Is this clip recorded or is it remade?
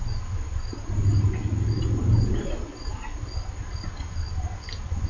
recorded